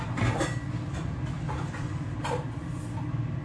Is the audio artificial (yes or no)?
no